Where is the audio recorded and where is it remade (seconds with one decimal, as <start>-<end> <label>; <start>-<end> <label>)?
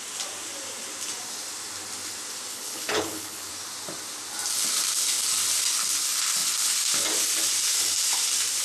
0.0-2.5 recorded; 2.5-3.5 remade; 3.5-8.6 recorded